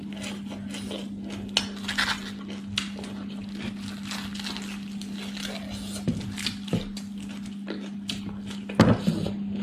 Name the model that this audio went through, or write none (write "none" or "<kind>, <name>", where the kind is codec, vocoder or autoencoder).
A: none